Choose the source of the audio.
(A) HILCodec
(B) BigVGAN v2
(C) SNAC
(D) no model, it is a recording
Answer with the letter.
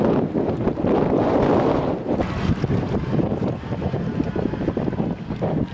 D